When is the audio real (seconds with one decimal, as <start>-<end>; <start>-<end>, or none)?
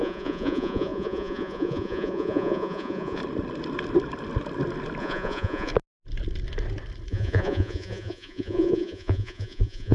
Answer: 3.2-5.0; 5.7-7.1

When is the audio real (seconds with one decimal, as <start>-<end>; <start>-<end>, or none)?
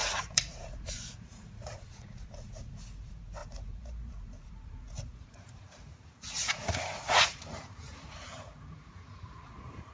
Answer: none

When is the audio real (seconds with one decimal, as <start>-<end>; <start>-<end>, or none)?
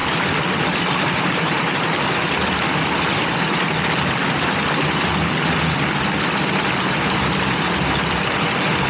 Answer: 0.0-8.9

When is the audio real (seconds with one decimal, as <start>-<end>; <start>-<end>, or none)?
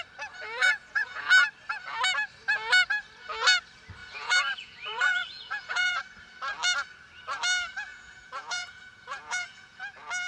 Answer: 0.0-0.6; 1.3-4.0; 6.0-7.9; 9.8-10.3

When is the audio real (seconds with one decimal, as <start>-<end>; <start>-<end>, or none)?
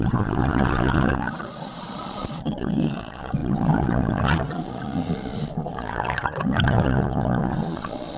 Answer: none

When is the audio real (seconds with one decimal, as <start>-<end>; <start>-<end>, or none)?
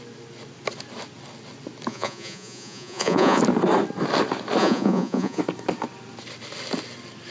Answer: 0.0-1.9; 3.4-4.6; 5.4-7.3